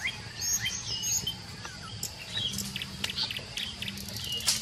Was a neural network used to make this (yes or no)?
no